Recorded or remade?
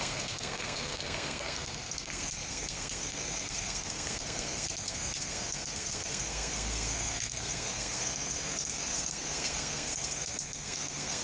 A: remade